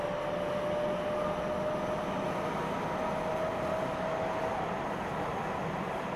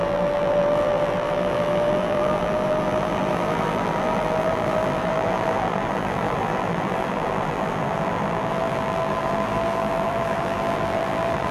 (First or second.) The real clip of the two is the first